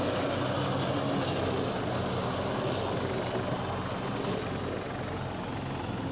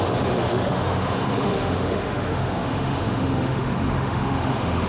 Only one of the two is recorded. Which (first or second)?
first